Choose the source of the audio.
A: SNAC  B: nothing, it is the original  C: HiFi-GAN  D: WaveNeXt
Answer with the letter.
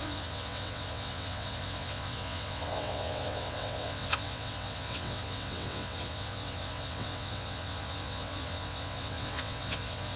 D